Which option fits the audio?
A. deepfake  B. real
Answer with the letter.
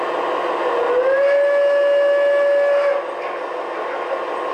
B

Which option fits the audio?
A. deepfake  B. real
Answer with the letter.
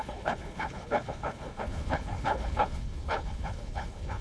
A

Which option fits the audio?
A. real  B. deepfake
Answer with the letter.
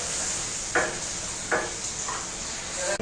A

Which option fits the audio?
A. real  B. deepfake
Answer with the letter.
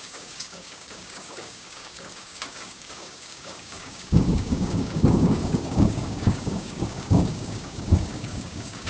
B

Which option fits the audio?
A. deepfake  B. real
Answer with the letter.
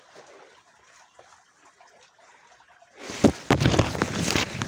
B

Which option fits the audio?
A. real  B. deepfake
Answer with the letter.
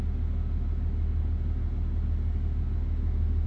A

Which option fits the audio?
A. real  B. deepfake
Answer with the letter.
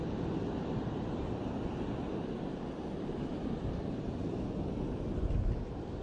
A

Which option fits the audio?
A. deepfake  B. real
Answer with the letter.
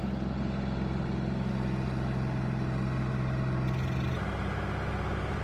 B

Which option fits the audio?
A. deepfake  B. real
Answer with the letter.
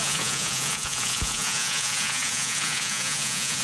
A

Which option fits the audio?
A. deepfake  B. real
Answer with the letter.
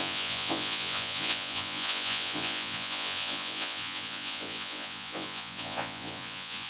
A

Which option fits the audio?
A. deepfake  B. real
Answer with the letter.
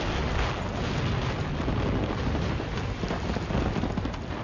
B